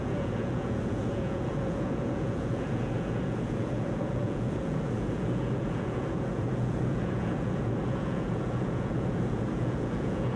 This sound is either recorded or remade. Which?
remade